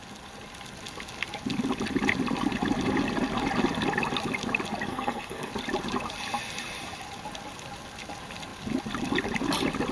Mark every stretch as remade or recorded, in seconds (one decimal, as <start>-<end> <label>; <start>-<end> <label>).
0.0-4.9 recorded; 4.9-5.5 remade; 5.5-9.9 recorded